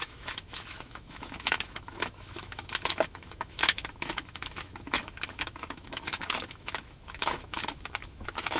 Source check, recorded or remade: remade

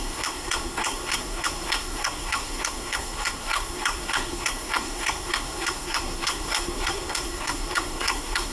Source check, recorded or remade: remade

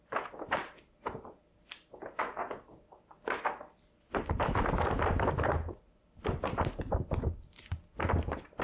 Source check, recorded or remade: recorded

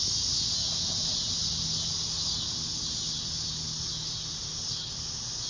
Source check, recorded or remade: recorded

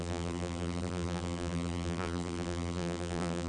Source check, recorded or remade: remade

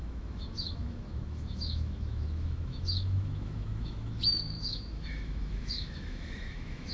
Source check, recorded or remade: remade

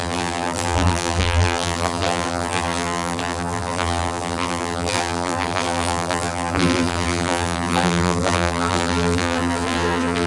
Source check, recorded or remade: remade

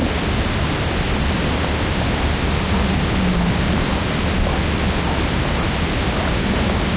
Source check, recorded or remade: recorded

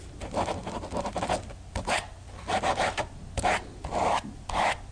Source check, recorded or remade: recorded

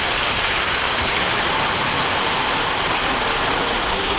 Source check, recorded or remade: recorded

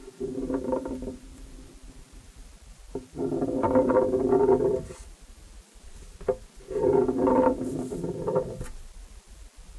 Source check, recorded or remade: recorded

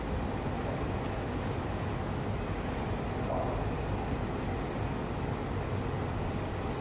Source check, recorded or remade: recorded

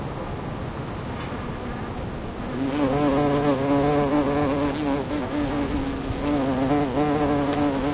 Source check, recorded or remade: recorded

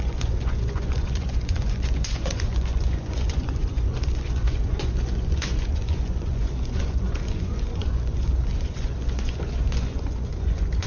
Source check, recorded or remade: remade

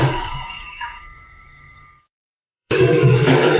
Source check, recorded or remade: remade